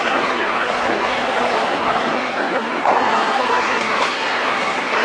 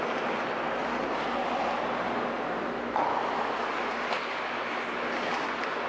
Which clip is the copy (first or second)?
first